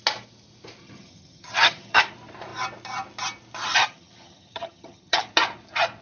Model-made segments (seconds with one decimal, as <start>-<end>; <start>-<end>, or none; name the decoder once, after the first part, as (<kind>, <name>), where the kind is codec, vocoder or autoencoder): 0.8-2.0 (vocoder, HiFi-GAN); 3.8-5.3